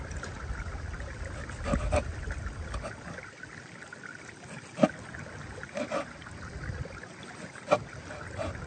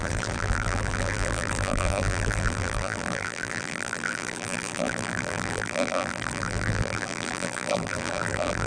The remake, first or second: second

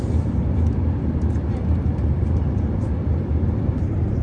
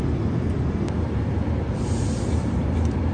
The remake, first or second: first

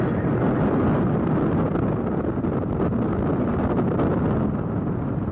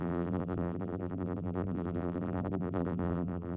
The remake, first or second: second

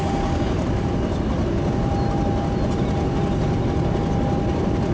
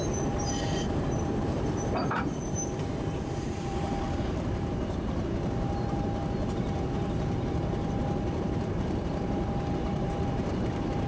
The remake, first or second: second